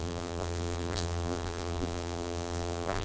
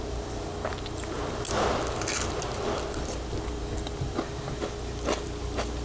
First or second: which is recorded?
second